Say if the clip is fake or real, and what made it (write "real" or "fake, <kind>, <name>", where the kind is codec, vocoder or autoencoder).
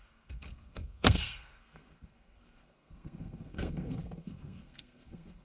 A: fake, codec, SNAC